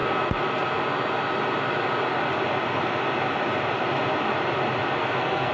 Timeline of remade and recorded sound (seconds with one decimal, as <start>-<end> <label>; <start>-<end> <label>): 0.0-5.0 recorded; 5.0-5.5 remade